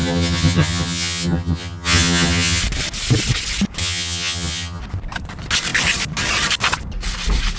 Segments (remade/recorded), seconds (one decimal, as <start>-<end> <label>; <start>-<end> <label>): 0.0-2.6 remade; 2.6-3.8 recorded; 3.8-4.8 remade; 4.8-7.6 recorded